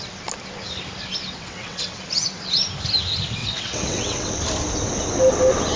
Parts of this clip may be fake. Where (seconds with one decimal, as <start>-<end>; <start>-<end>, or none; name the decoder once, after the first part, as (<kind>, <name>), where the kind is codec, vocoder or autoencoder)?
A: 1.3-2.0 (vocoder, WaveNeXt); 3.4-4.3